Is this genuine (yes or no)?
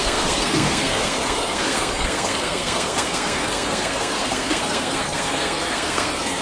no